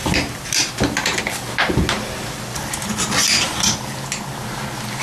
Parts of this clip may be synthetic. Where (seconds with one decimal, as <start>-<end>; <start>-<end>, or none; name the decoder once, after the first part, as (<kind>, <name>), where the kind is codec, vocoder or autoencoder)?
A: none